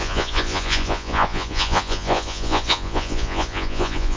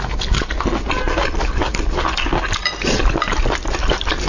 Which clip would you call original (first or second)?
second